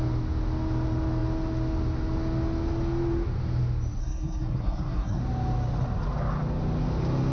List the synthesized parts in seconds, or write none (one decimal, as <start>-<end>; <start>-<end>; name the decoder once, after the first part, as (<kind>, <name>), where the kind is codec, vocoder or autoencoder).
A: 4.0-5.2 (codec, SNAC)